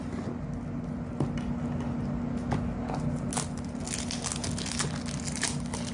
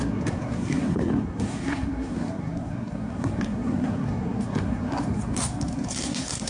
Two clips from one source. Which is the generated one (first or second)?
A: second